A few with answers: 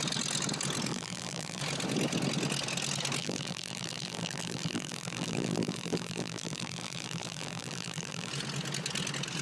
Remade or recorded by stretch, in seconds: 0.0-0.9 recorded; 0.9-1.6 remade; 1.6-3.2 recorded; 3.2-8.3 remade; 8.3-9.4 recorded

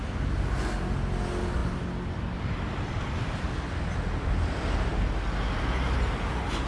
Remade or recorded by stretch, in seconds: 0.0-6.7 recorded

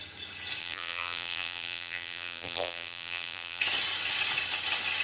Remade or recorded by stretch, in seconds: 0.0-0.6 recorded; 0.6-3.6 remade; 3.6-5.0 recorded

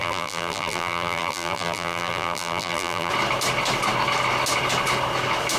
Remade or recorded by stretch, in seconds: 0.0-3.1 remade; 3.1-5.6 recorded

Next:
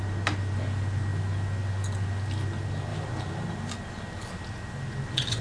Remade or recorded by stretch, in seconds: 0.0-2.9 recorded; 2.9-3.7 remade; 3.7-5.4 recorded

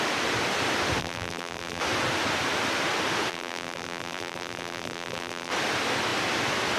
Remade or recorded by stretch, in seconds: 0.0-1.0 recorded; 1.0-1.8 remade; 1.8-3.3 recorded; 3.3-5.5 remade; 5.5-6.8 recorded

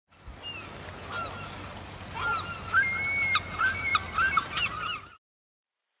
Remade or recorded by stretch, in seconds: 0.0-3.4 recorded; 3.4-6.0 remade

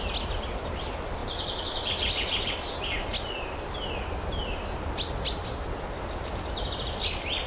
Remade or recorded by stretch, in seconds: 0.0-7.5 recorded